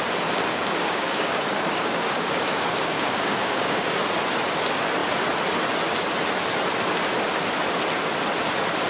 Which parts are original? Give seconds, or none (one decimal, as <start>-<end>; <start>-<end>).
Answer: 0.0-0.5; 4.0-8.9